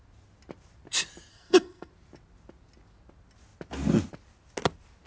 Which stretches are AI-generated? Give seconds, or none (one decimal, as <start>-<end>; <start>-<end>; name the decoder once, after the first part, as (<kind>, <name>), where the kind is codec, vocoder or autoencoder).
1.3-1.9 (codec, SNAC)